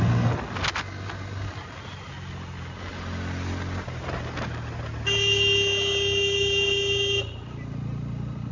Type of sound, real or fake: real